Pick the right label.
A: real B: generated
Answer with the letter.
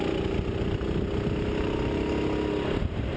A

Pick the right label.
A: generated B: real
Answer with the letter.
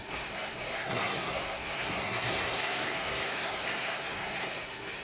A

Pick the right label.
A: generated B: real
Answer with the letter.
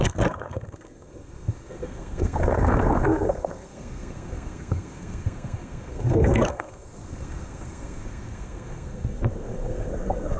A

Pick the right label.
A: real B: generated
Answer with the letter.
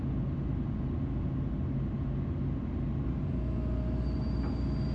A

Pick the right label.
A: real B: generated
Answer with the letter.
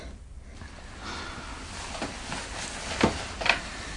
A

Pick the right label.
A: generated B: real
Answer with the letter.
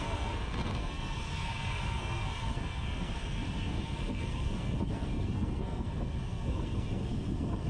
A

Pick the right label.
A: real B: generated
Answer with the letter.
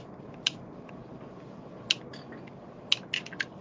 A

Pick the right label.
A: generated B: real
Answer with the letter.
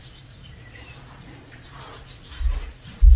B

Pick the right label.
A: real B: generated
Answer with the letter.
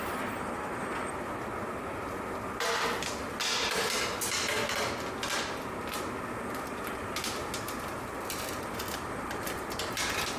A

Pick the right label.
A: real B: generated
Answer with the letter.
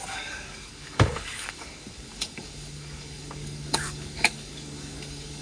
B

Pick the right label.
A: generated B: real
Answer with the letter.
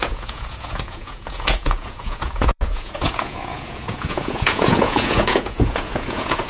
A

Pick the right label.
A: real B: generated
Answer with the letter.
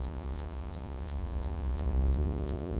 B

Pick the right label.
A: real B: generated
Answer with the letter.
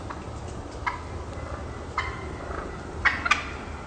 A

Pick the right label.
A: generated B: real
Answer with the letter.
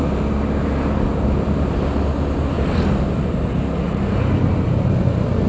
B